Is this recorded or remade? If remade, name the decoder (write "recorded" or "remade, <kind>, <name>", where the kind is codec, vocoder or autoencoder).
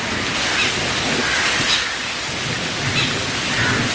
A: recorded